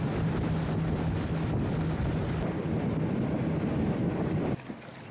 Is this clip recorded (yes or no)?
yes